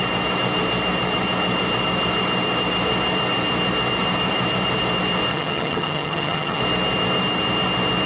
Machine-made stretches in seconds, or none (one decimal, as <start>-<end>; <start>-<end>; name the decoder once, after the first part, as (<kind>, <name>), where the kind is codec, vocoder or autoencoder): 5.3-6.6 (vocoder, HiFi-GAN)